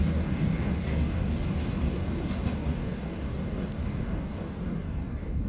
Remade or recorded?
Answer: remade